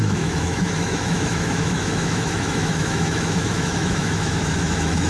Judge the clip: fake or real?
fake